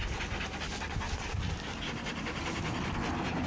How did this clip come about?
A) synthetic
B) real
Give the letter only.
B